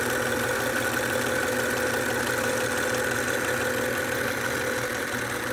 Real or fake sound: real